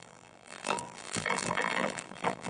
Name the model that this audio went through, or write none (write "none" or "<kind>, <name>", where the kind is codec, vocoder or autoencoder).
vocoder, BigVGAN v2